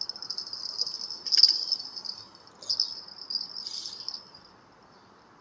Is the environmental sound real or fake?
real